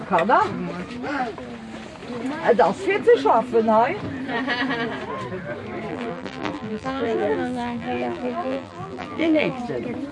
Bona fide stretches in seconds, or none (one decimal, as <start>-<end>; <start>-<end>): 0.0-5.9; 9.6-10.1